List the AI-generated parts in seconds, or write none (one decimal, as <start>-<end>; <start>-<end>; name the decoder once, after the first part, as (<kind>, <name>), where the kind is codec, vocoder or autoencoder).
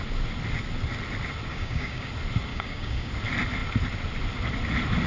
1.5-2.1 (codec, DAC); 2.5-3.1